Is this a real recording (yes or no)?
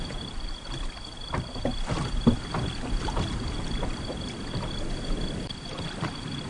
yes